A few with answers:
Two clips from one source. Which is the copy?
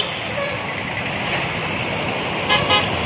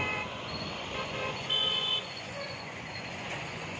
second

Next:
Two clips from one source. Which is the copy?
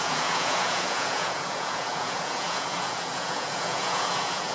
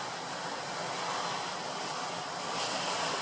first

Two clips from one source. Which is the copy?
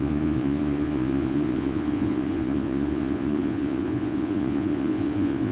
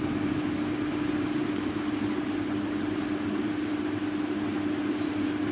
first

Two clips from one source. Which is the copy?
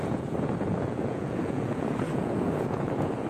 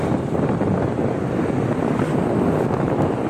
first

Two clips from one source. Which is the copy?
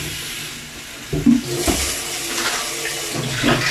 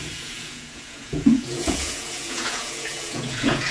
second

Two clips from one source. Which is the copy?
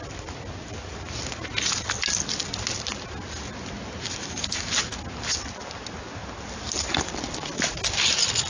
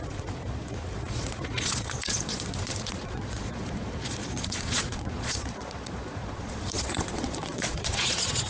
second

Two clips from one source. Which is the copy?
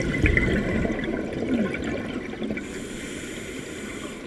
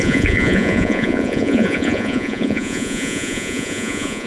second